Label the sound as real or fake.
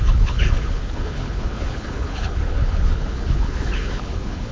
fake